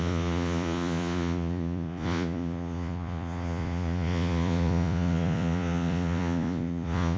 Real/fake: fake